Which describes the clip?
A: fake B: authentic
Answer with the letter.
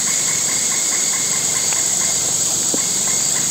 A